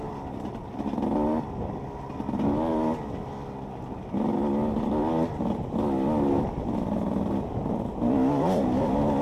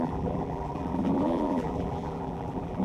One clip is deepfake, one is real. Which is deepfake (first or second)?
second